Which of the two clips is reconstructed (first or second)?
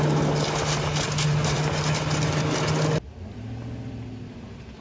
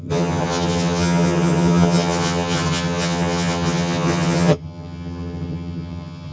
second